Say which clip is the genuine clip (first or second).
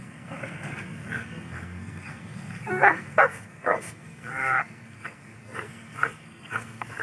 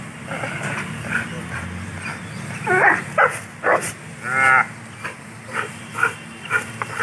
second